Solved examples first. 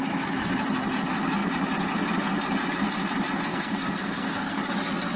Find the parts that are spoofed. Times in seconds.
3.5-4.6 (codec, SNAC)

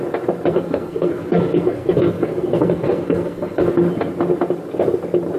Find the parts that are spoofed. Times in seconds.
0.5-3.7 (codec, SNAC)